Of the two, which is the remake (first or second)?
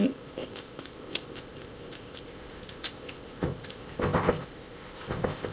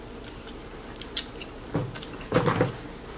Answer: first